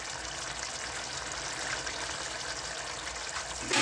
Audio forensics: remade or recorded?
recorded